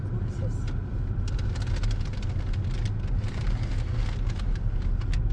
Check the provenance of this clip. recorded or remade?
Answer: recorded